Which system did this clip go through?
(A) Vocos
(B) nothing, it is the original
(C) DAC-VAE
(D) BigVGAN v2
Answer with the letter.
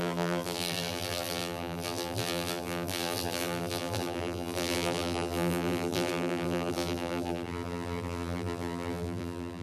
D